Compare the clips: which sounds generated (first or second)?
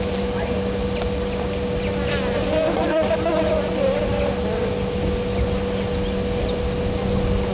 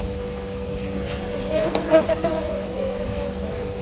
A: second